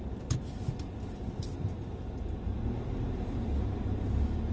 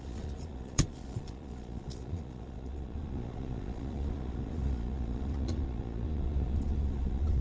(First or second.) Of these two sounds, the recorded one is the first